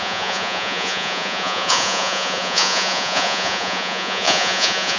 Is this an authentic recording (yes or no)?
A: no